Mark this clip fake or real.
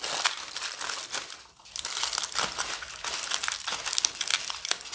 real